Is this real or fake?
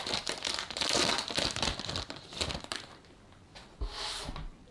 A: real